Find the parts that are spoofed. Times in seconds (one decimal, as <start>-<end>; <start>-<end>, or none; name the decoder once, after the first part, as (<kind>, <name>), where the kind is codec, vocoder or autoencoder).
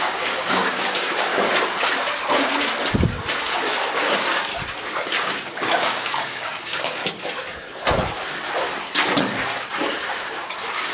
0.0-1.3 (codec, DAC); 3.4-4.5; 5.0-7.0; 10.2-10.9